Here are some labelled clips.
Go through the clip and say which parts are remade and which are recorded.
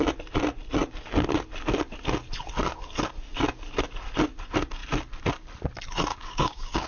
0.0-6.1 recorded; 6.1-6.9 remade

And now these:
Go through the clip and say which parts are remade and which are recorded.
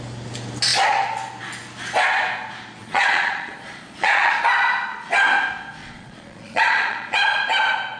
0.0-2.8 recorded; 2.8-4.4 remade; 4.4-5.8 recorded; 5.8-7.4 remade; 7.4-8.0 recorded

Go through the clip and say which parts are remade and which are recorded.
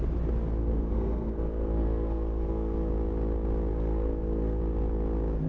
0.0-0.6 recorded; 0.6-2.9 remade; 2.9-3.7 recorded; 3.7-4.6 remade; 4.6-5.5 recorded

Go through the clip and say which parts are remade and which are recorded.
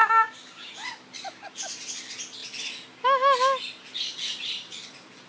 0.0-0.7 remade; 0.7-5.3 recorded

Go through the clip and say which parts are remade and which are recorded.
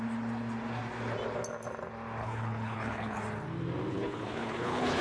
0.0-2.2 recorded; 2.2-3.2 remade; 3.2-3.9 recorded; 3.9-5.0 remade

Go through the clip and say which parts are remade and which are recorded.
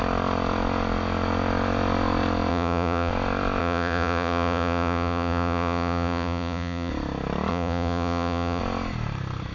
0.0-2.5 recorded; 2.5-3.1 remade; 3.1-3.6 recorded; 3.6-6.9 remade; 6.9-7.5 recorded; 7.5-8.6 remade; 8.6-9.5 recorded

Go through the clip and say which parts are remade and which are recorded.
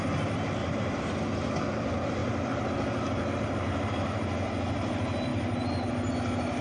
0.0-0.6 recorded; 0.6-1.2 remade; 1.2-2.2 recorded; 2.2-2.7 remade; 2.7-6.6 recorded